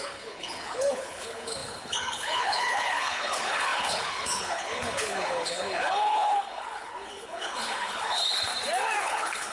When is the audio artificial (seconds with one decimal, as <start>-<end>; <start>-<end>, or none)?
0.0-8.5; 9.0-9.5